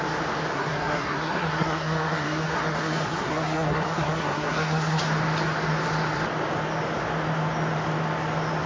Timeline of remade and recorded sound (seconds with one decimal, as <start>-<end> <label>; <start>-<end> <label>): 0.0-0.5 recorded; 0.5-5.0 remade; 5.0-8.7 recorded